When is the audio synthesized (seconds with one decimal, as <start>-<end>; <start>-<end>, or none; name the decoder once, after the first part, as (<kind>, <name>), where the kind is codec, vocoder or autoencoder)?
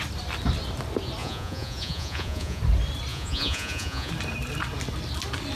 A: 1.2-2.6 (vocoder, Vocos); 3.1-4.1